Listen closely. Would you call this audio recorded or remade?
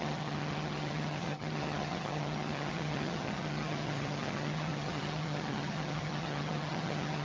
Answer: remade